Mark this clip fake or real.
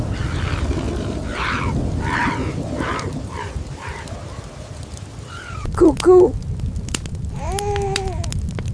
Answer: real